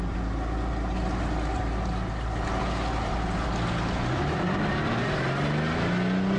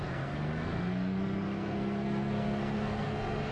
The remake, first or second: second